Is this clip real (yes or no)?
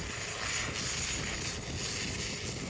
yes